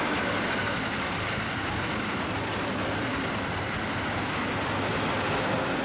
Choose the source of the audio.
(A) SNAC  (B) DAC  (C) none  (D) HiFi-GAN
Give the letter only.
C